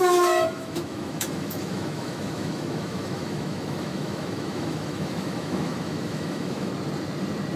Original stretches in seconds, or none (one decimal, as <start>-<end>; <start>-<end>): 6.7-7.6